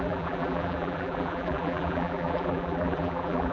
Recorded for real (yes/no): no